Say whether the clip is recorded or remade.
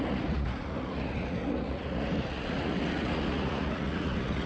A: remade